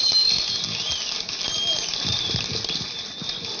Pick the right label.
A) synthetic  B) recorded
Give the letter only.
B